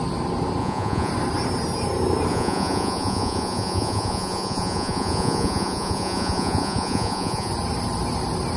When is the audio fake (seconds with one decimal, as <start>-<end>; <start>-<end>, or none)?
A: 0.6-1.1; 2.3-7.5